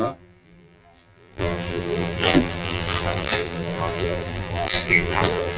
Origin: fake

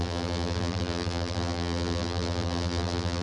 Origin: fake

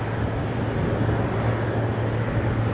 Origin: real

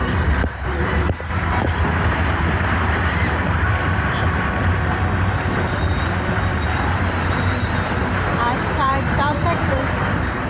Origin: fake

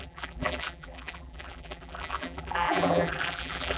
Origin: fake